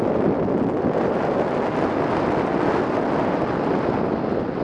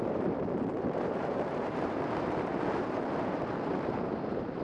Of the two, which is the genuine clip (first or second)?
first